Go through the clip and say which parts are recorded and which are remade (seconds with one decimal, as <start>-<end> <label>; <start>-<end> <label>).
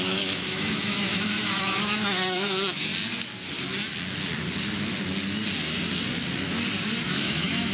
0.0-2.9 remade; 2.9-7.1 recorded; 7.1-7.7 remade